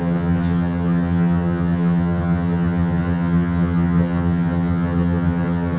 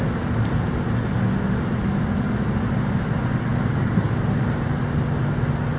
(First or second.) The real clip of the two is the second